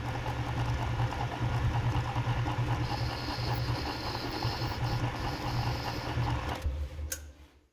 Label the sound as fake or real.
real